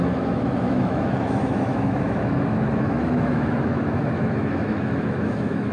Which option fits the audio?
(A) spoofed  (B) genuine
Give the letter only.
A